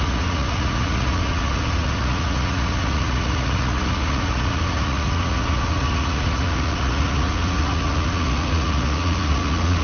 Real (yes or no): no